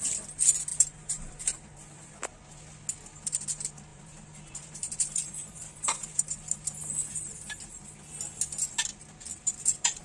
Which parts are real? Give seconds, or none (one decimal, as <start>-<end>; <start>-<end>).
0.0-0.7; 2.1-3.9; 6.2-7.1; 7.7-9.3